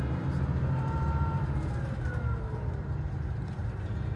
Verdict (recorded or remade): remade